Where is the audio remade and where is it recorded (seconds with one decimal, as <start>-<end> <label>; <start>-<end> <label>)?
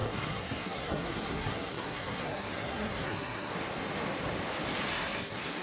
0.0-3.5 remade; 3.5-4.9 recorded; 4.9-5.6 remade